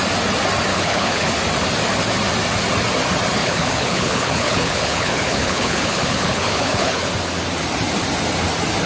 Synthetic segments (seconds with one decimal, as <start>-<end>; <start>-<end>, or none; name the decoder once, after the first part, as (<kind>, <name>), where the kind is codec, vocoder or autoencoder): 0.7-1.3 (codec, HILCodec); 3.4-7.1